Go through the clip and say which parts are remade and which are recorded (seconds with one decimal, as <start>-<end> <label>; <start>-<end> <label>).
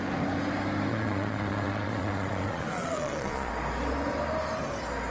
0.0-0.9 recorded; 0.9-3.5 remade; 3.5-5.1 recorded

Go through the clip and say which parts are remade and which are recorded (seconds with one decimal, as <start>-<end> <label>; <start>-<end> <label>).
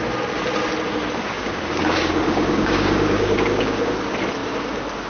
0.0-1.2 recorded; 1.2-4.0 remade; 4.0-5.1 recorded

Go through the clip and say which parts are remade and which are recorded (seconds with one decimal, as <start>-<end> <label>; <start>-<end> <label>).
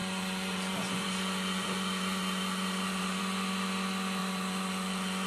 0.0-3.2 remade; 3.2-4.2 recorded; 4.2-5.3 remade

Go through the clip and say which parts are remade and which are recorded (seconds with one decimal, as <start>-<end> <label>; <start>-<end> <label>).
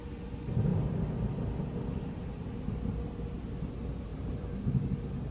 0.0-4.1 recorded; 4.1-4.6 remade; 4.6-5.3 recorded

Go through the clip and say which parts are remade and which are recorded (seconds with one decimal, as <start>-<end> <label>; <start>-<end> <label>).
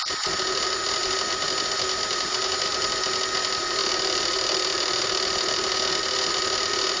0.0-7.0 recorded